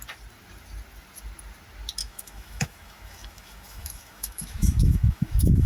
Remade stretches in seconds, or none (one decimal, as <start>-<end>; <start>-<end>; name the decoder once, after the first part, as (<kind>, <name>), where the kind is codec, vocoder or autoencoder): 2.0-5.7 (autoencoder, DAC-VAE)